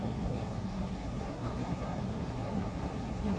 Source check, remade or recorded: remade